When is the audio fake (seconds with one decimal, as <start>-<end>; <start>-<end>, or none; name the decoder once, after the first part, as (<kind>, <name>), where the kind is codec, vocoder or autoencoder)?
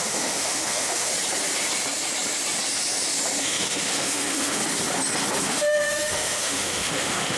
0.0-1.1 (autoencoder, DAC-VAE); 3.4-4.6; 5.4-7.4